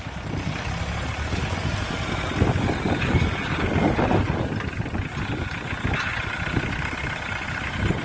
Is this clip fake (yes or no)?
no